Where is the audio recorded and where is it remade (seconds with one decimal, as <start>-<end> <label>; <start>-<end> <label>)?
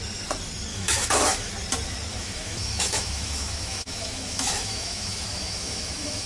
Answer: 0.0-0.7 recorded; 0.7-1.5 remade; 1.5-2.1 recorded; 2.1-6.3 remade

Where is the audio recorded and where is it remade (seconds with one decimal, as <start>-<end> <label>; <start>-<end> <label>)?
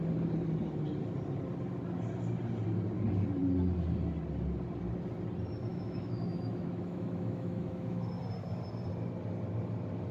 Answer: 0.0-5.7 recorded; 5.7-8.2 remade; 8.2-10.1 recorded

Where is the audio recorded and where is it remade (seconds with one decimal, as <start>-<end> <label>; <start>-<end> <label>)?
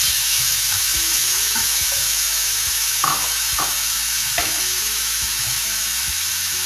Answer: 0.0-6.7 remade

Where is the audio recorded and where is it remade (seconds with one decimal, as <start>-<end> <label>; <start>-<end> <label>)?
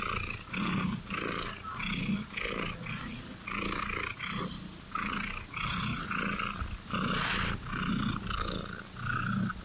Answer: 0.0-9.6 recorded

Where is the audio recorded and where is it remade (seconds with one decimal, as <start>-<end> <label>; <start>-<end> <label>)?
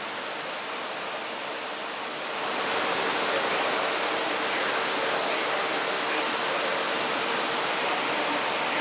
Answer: 0.0-8.8 recorded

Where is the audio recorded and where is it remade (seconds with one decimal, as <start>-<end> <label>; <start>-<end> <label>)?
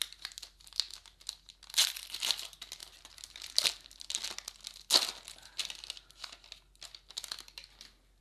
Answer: 0.0-8.2 recorded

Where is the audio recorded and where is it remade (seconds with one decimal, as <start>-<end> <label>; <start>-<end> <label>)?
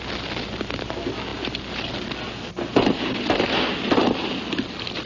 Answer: 0.0-5.1 recorded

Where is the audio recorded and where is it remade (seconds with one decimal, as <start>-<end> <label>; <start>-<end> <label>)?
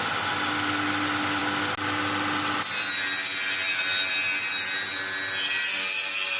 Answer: 0.0-6.4 recorded